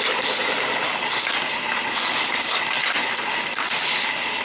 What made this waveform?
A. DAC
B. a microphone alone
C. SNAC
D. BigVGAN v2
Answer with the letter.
B